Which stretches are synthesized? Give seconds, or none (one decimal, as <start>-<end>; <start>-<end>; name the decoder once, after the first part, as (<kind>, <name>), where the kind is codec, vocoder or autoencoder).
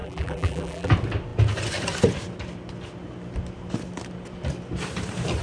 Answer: 0.0-0.9 (vocoder, BigVGAN v2)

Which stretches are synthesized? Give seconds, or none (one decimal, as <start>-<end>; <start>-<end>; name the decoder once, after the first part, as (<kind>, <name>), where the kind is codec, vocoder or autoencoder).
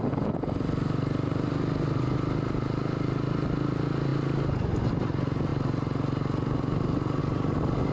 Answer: none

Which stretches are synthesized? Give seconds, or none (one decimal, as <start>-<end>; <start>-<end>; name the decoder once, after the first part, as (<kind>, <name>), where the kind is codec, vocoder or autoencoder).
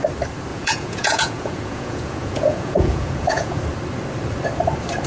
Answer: 0.5-3.6 (vocoder, Vocos)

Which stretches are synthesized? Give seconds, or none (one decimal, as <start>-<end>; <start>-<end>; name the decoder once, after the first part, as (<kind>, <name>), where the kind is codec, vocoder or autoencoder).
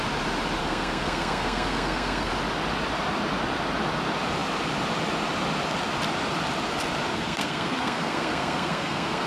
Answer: 0.6-2.3 (codec, SNAC); 7.1-9.3